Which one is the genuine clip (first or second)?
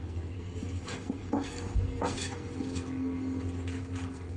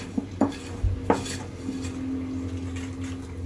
second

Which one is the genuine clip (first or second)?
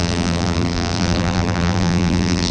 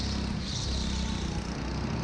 second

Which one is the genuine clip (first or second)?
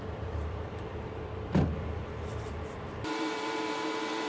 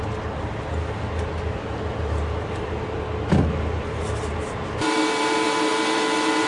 second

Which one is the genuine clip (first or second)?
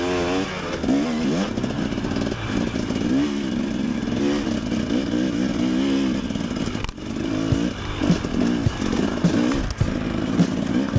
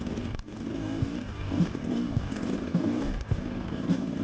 first